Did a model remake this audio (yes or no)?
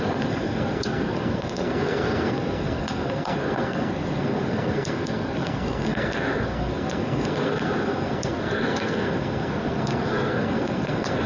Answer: yes